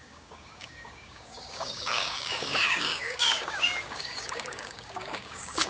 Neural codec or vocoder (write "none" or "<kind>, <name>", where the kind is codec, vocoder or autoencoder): codec, DAC